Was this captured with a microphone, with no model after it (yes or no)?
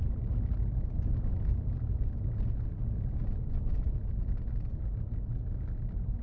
yes